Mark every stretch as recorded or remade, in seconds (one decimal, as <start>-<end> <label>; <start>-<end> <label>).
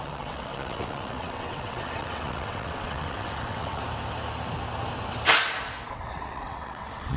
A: 0.0-3.8 remade; 3.8-5.9 recorded; 5.9-7.2 remade